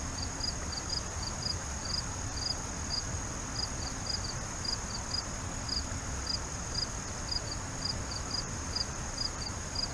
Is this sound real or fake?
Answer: fake